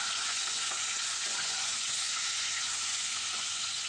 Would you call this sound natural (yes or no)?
no